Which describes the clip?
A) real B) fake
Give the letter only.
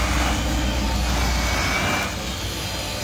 A